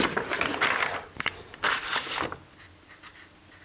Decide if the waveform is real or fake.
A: real